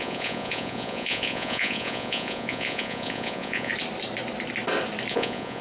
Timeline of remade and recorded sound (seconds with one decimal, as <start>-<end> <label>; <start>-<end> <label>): 0.0-3.7 remade; 3.7-5.1 recorded; 5.1-5.6 remade